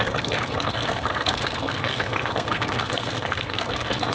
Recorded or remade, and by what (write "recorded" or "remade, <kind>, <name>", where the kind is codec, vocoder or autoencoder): remade, codec, SNAC